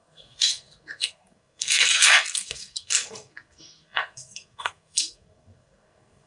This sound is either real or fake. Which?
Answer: fake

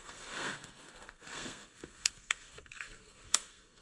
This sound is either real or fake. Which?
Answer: fake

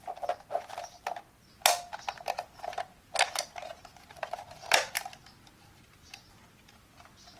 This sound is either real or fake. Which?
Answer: real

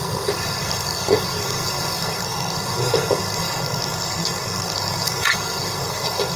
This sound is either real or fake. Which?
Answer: fake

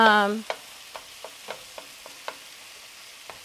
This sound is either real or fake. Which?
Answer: real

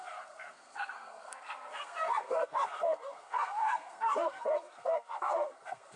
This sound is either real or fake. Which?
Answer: fake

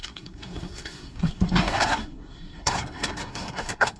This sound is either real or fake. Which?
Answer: fake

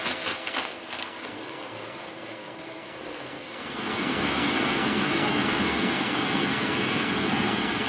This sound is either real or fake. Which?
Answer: fake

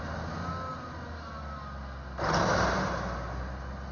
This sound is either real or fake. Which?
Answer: real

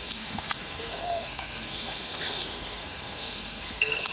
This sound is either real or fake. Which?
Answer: fake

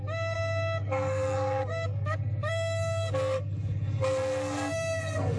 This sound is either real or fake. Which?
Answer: fake